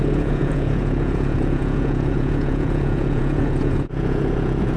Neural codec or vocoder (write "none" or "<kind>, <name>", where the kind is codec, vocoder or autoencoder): vocoder, Vocos